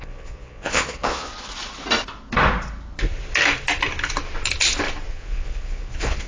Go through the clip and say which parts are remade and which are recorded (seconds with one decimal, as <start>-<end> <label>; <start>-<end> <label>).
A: 0.0-1.3 remade; 1.3-5.1 recorded; 5.1-6.3 remade